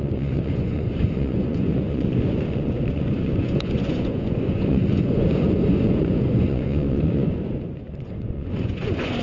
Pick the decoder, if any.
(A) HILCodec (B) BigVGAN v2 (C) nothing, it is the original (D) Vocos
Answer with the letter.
D